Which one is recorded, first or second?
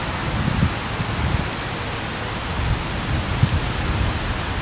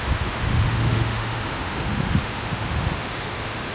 first